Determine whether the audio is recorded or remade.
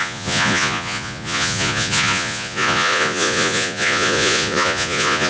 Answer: remade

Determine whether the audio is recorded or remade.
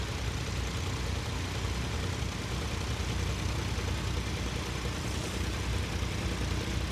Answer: recorded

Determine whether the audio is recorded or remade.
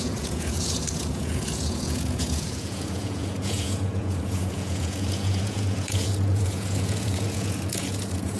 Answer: remade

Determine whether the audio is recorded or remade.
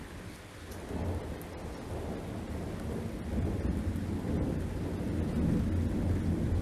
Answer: recorded